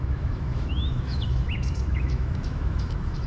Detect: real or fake fake